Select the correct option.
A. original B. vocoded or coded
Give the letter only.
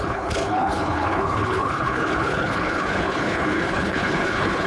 B